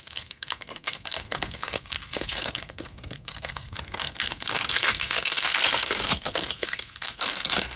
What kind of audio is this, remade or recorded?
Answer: remade